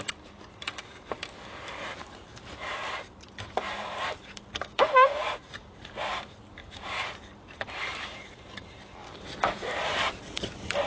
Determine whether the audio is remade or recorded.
remade